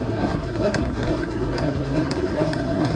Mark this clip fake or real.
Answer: fake